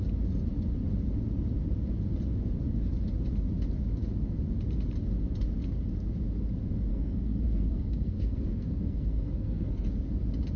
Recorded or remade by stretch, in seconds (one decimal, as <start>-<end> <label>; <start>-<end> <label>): 0.0-6.9 recorded; 6.9-9.9 remade; 9.9-10.6 recorded